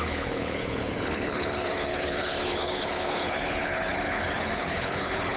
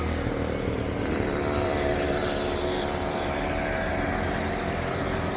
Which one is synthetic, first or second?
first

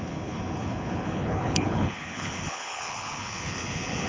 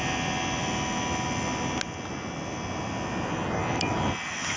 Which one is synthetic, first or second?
first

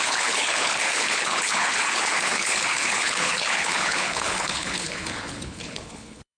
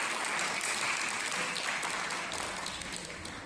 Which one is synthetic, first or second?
first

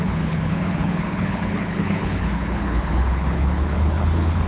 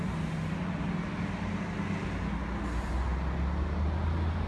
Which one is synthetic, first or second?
first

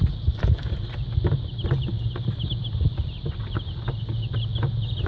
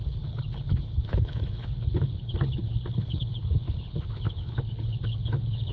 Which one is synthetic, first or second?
second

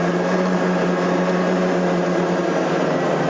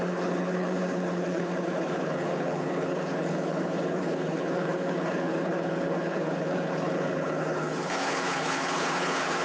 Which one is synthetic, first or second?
second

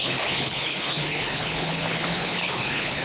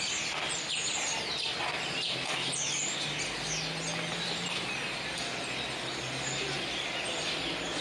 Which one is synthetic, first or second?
first